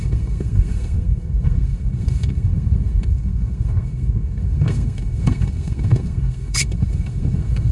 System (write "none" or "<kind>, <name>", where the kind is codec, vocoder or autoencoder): codec, SNAC